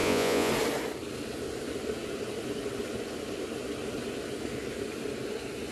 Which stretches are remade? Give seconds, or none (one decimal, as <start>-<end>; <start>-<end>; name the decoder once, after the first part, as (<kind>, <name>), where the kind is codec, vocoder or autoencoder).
0.0-0.5 (vocoder, Vocos)